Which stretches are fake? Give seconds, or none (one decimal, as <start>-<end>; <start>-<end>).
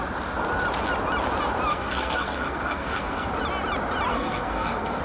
1.7-3.3; 4.1-5.0